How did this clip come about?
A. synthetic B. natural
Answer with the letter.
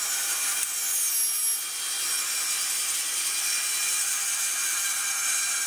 B